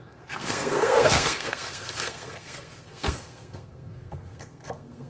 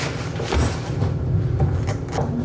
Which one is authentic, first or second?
second